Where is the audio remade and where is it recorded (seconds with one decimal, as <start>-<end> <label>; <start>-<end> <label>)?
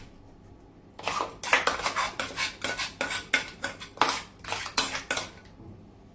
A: 0.0-6.1 recorded